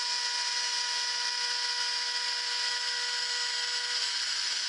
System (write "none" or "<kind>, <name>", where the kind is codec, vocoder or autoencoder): none